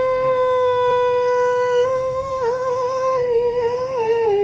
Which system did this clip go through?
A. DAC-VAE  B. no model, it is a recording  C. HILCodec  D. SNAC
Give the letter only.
A